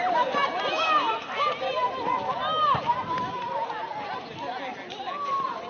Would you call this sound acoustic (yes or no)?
yes